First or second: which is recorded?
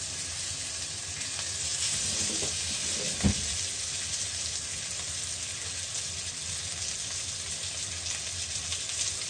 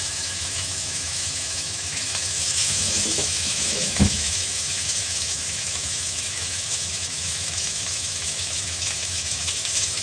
first